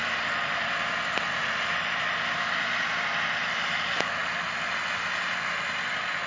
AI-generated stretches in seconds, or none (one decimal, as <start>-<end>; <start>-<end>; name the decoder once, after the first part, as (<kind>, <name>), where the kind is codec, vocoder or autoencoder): 4.2-4.7 (vocoder, BigVGAN v2)